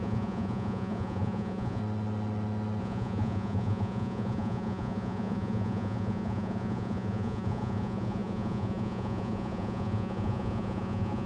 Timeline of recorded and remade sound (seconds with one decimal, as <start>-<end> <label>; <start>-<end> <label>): 0.0-1.8 remade; 1.8-2.8 recorded; 2.8-11.3 remade